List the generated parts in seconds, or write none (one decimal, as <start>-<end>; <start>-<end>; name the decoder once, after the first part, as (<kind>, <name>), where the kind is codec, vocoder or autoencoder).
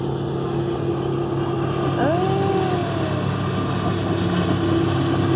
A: none